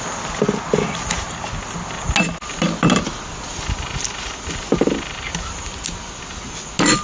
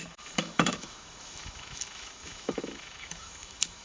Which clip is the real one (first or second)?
first